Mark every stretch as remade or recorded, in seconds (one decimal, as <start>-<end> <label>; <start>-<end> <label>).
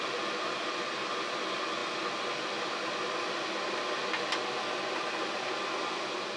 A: 0.0-6.4 recorded